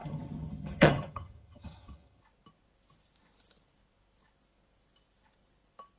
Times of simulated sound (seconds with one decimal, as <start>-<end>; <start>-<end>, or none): 0.0-2.2